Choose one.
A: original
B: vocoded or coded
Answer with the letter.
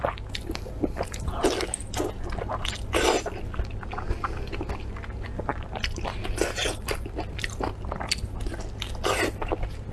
A